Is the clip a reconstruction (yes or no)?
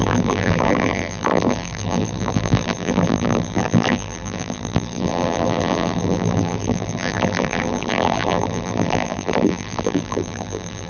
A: yes